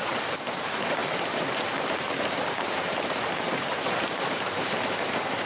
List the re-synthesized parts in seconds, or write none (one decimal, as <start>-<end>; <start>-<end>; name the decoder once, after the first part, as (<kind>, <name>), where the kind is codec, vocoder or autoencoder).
0.0-5.5 (vocoder, BigVGAN v2)